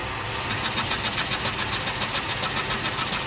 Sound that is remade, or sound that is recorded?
recorded